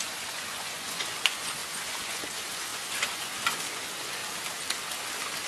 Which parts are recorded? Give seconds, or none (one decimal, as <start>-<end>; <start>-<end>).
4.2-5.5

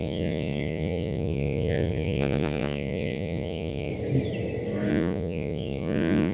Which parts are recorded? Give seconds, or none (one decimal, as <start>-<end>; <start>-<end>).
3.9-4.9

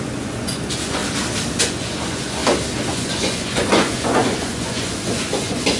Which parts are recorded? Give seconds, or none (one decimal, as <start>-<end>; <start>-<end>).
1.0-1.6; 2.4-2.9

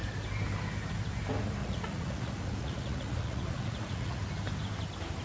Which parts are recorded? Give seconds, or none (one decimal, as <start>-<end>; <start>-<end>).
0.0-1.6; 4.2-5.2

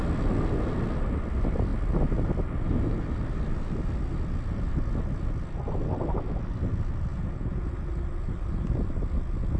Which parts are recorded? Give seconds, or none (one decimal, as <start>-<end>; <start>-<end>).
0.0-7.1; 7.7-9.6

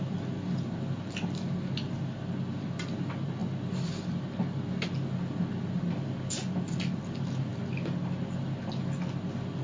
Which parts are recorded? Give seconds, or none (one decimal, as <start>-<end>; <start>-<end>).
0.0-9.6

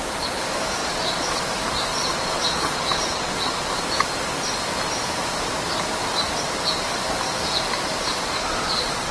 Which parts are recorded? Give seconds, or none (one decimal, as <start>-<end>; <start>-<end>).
0.0-0.8; 1.4-1.9; 3.7-8.1

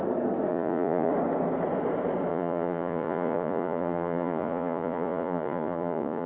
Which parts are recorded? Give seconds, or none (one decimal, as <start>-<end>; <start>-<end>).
0.0-0.5; 1.1-2.3